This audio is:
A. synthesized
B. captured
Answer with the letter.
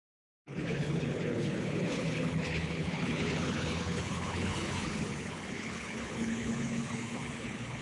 A